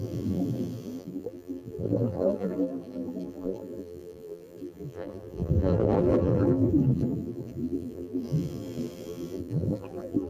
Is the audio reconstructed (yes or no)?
yes